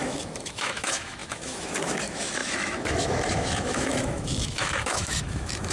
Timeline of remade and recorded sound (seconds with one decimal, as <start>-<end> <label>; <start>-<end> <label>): 0.0-5.7 remade